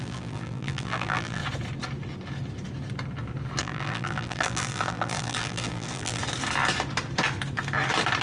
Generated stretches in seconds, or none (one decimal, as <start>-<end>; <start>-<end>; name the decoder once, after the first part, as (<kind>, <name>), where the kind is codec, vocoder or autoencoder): 0.0-1.4 (vocoder, BigVGAN v2); 3.6-6.2